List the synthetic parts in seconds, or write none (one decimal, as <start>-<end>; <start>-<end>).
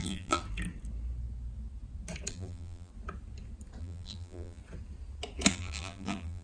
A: 0.0-0.4; 2.3-2.9; 3.8-4.6; 5.5-6.4